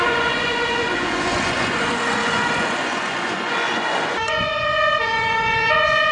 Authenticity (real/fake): fake